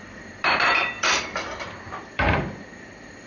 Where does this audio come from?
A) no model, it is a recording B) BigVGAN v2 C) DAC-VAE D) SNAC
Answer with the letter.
B